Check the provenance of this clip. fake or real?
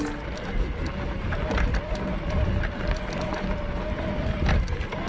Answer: real